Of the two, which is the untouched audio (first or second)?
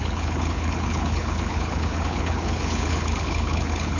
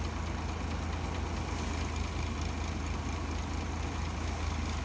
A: second